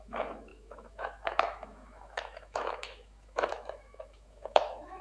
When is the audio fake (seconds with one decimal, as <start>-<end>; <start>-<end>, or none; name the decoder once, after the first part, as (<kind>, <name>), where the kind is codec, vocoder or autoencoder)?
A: 0.0-5.0 (autoencoder, DAC-VAE)